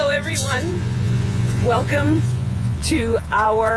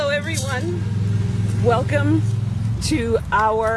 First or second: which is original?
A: second